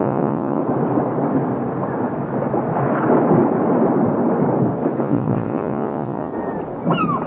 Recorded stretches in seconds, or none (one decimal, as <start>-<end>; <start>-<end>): 0.6-5.0; 6.3-7.3